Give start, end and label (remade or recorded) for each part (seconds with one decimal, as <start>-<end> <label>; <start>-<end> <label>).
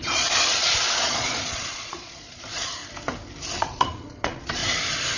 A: 0.0-2.8 remade; 2.8-3.6 recorded; 3.6-4.6 remade; 4.6-5.2 recorded